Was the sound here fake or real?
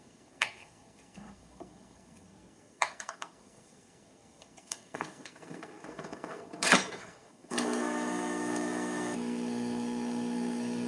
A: fake